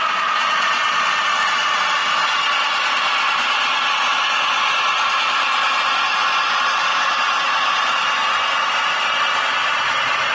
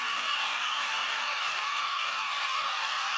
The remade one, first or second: second